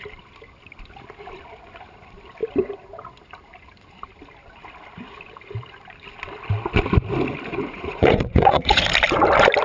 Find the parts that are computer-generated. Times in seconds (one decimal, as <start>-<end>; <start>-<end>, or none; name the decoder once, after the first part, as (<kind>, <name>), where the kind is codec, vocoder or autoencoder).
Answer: 7.5-8.8 (vocoder, Vocos)